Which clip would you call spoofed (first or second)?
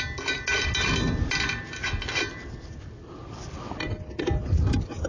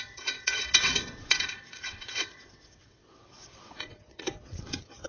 second